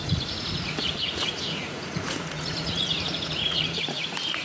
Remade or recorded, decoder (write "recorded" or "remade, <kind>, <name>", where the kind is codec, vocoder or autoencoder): remade, vocoder, Vocos